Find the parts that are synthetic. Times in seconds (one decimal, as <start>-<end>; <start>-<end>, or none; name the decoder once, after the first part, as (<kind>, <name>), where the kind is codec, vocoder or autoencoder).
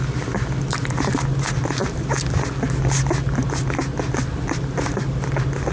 none